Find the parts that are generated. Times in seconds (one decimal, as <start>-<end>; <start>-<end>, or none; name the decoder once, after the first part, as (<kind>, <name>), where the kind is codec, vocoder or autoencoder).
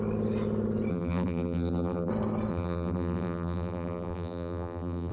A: 0.9-2.1 (vocoder, BigVGAN v2); 2.5-5.1